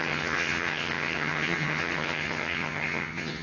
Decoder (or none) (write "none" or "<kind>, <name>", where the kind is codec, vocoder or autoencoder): vocoder, HiFi-GAN